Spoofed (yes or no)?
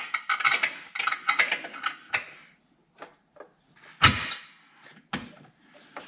no